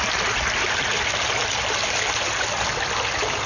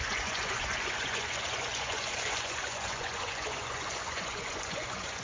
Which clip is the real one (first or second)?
first